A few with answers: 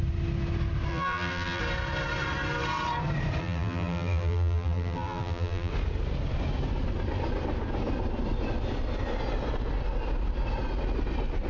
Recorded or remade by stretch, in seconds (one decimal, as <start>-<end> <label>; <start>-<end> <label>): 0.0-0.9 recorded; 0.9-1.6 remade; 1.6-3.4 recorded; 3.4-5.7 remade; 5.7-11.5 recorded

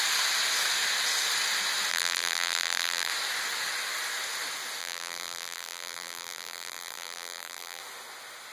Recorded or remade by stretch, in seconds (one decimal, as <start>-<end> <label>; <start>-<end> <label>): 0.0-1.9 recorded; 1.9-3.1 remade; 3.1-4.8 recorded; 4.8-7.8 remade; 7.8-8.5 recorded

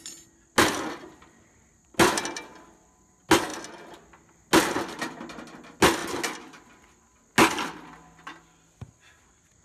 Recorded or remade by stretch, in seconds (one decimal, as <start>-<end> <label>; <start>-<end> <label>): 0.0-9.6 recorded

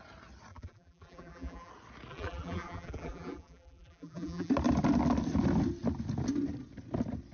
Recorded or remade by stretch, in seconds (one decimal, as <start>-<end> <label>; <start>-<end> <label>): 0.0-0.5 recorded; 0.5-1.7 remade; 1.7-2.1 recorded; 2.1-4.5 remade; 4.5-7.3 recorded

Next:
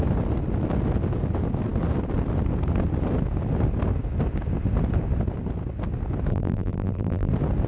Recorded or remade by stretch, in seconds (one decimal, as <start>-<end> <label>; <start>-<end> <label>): 0.0-6.3 recorded; 6.3-7.3 remade; 7.3-7.7 recorded

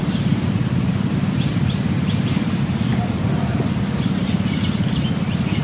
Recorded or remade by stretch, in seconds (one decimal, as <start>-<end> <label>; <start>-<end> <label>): 0.0-5.6 recorded

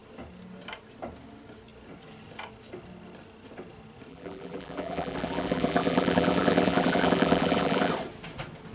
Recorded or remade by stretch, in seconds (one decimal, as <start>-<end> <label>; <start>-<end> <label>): 0.0-4.1 recorded; 4.1-7.9 remade; 7.9-8.7 recorded

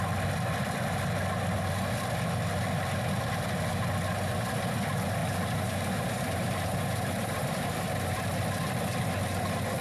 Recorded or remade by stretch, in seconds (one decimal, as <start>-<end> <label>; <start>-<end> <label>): 0.0-5.2 recorded; 5.2-8.3 remade; 8.3-9.8 recorded